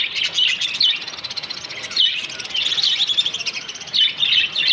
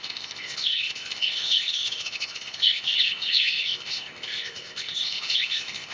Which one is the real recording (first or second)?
first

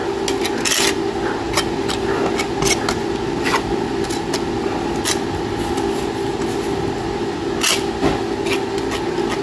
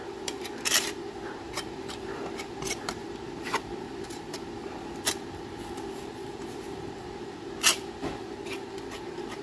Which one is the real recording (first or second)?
first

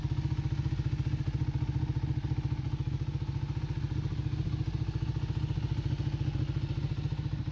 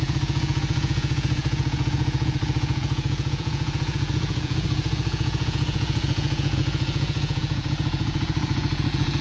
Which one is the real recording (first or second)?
first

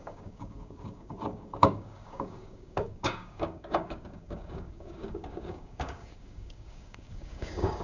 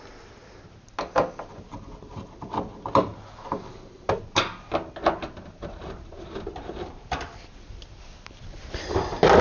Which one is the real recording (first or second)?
second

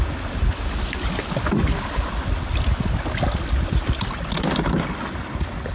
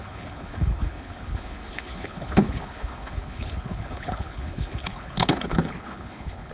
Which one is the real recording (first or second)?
first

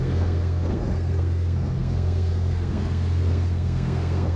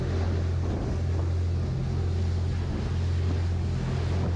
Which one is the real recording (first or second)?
second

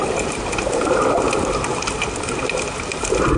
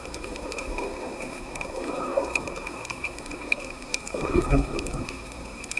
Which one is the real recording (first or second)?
first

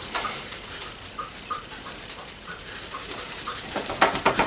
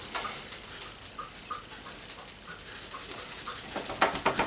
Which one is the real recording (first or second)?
second